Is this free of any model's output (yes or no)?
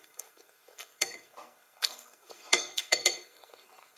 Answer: no